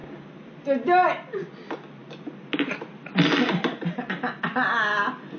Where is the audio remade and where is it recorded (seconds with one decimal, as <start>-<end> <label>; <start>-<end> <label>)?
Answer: 0.0-5.4 recorded